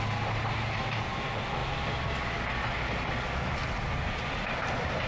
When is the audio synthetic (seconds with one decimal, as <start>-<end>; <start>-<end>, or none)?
none